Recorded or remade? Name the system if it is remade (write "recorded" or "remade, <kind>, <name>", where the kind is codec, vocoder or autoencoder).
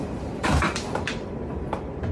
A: remade, vocoder, BigVGAN v2